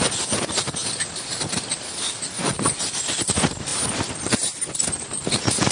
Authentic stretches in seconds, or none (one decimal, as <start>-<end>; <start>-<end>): 0.0-5.7